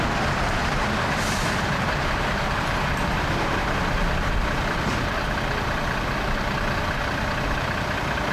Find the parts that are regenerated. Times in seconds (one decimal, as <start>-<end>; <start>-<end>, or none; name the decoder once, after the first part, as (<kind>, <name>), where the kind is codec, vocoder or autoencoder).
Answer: 0.6-2.1 (vocoder, BigVGAN v2)